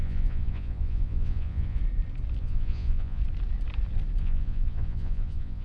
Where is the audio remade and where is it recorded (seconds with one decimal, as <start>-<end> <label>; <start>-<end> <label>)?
0.0-1.8 remade; 1.8-2.4 recorded; 2.4-3.2 remade; 3.2-4.2 recorded; 4.2-5.6 remade